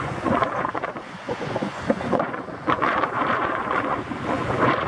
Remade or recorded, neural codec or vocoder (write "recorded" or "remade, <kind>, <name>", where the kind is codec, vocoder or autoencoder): remade, vocoder, Vocos